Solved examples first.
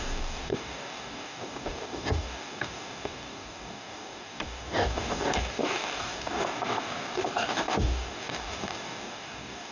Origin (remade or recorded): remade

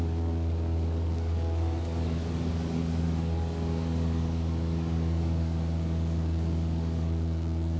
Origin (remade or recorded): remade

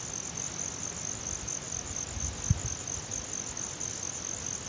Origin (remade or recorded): recorded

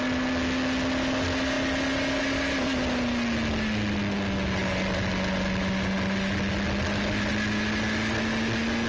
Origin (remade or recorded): recorded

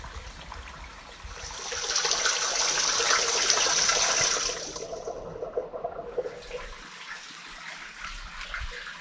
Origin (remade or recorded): recorded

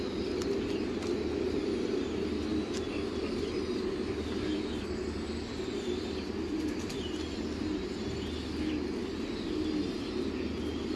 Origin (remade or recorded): recorded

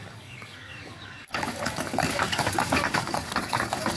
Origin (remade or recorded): remade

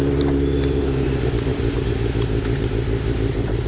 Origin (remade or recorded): recorded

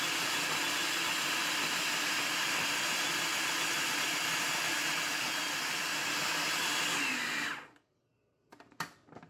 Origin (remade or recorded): recorded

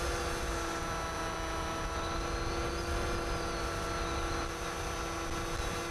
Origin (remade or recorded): recorded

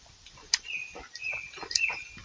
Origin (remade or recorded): recorded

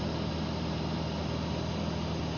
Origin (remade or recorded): recorded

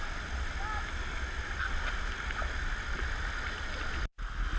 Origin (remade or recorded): recorded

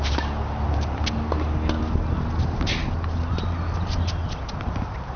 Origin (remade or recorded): recorded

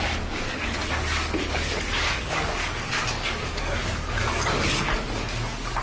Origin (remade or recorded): remade